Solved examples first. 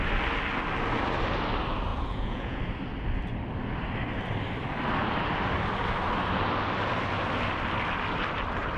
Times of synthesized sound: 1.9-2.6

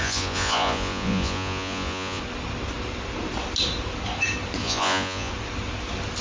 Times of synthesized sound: 0.0-2.2; 4.6-5.3

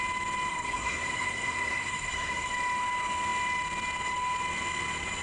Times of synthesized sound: 0.5-2.5

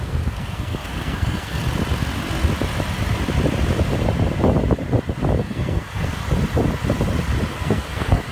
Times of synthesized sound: 0.0-1.6; 5.4-6.2; 7.5-8.3

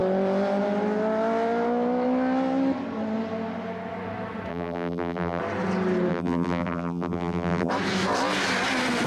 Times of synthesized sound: 4.5-5.4; 6.1-7.7

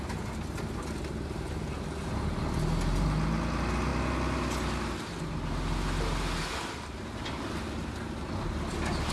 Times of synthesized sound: none